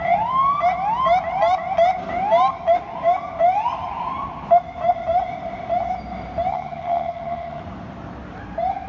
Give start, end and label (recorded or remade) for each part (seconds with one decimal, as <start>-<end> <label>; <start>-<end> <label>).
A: 0.0-6.5 recorded; 6.5-7.6 remade; 7.6-8.9 recorded